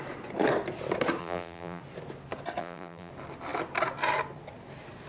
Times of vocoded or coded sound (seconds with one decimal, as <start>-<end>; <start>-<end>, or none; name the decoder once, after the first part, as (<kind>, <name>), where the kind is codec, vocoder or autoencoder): 1.2-1.8 (vocoder, BigVGAN v2); 2.6-3.1